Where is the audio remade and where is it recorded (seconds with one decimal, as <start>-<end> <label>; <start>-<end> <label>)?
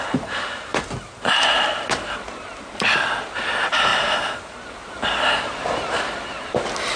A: 0.0-0.7 remade; 0.7-2.2 recorded; 2.2-3.9 remade; 3.9-4.9 recorded; 4.9-7.0 remade